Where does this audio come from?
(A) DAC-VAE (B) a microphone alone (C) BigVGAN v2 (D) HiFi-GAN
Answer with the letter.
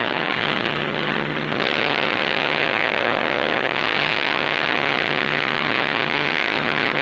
D